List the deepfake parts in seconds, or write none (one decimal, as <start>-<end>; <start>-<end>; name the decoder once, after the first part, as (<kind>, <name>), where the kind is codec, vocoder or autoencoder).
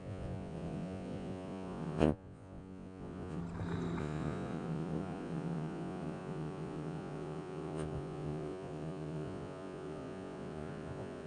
0.0-3.4 (vocoder, Vocos); 4.0-11.3